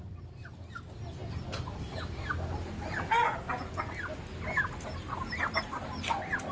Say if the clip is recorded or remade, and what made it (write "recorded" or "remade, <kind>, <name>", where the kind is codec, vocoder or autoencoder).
recorded